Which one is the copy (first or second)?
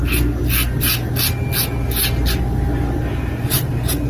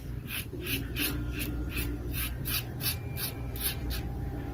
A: second